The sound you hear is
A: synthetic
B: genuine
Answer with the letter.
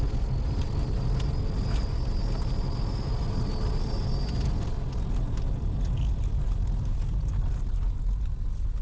B